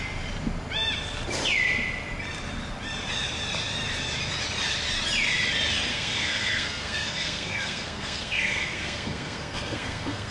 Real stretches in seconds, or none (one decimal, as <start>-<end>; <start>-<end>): 0.0-5.9